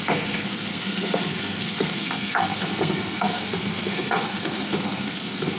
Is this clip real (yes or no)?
no